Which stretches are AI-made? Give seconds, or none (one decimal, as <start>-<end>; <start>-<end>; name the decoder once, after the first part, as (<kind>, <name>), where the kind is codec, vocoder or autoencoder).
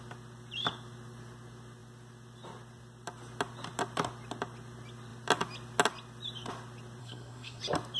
7.0-7.6 (codec, SNAC)